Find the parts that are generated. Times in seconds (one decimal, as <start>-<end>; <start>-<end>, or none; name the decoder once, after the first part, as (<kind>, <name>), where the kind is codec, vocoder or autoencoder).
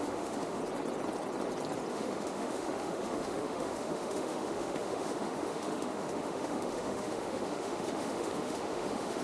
0.0-0.6 (autoencoder, DAC-VAE); 1.9-9.2